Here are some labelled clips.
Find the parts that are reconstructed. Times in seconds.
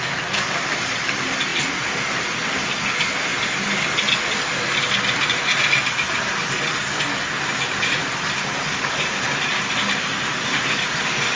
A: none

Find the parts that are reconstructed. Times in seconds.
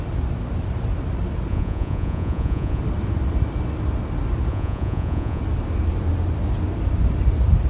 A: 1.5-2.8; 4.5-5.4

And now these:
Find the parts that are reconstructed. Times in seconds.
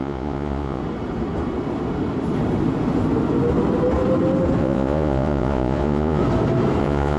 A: 0.0-0.8; 4.6-6.2; 6.8-7.2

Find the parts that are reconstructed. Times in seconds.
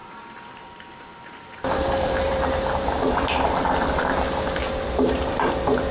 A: 0.0-3.5; 4.6-5.5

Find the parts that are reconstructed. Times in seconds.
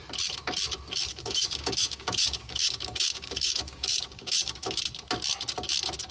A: 1.1-4.8